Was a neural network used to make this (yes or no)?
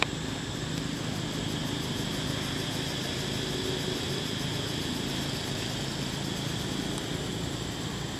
no